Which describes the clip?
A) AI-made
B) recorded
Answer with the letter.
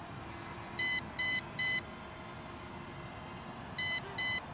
B